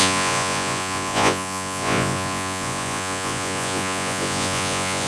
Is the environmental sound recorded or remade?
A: remade